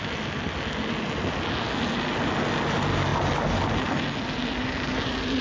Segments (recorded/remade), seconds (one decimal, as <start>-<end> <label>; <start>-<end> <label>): 0.0-5.4 recorded

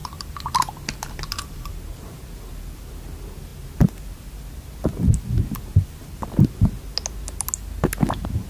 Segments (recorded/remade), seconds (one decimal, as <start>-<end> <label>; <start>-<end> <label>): 0.0-1.7 remade; 1.7-8.5 recorded

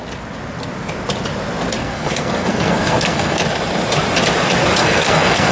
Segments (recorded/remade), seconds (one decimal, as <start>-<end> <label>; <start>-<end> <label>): 0.0-1.8 recorded; 1.8-3.4 remade; 3.4-4.8 recorded; 4.8-5.5 remade

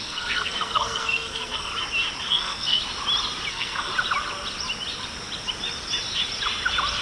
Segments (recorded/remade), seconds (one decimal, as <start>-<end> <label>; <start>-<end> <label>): 0.0-1.7 remade; 1.7-2.3 recorded; 2.3-2.8 remade; 2.8-3.5 recorded; 3.5-3.9 remade; 3.9-7.0 recorded

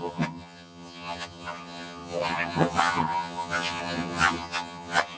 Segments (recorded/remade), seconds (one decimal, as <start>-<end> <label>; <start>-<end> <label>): 0.0-5.2 remade

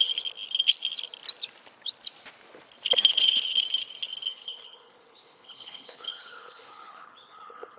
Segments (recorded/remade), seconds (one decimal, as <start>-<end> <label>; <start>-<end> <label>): 0.0-4.3 recorded; 4.3-7.8 remade

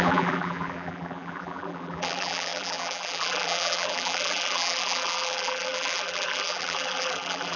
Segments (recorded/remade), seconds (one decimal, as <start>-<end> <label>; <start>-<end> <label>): 0.0-7.6 remade